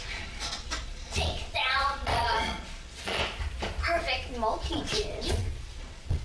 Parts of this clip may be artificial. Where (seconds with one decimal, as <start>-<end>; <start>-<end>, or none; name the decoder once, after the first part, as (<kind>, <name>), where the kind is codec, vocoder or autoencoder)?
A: 0.0-3.2 (vocoder, Vocos); 4.5-6.2